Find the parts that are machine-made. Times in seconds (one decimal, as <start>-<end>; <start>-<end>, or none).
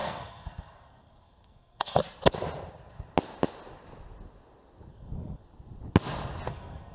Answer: 0.0-2.0; 4.9-5.4; 6.5-6.9